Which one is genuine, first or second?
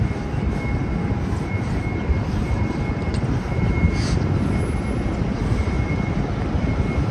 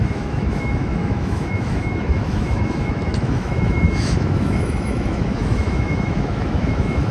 first